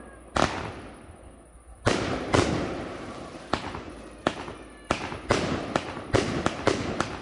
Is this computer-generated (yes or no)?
no